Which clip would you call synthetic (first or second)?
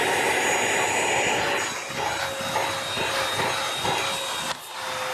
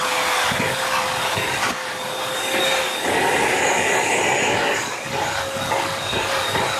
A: second